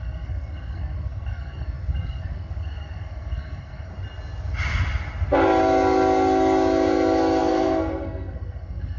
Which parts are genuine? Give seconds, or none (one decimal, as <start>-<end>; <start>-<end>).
3.9-7.4